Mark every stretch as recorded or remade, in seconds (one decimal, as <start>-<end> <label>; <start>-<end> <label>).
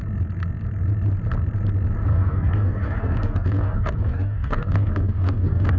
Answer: 0.0-2.1 recorded; 2.1-5.8 remade